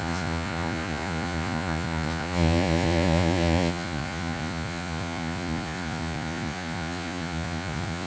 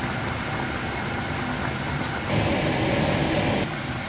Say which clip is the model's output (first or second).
first